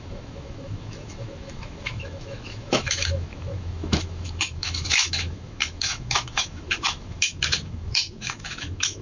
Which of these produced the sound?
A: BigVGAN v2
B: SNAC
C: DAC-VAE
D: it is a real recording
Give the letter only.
C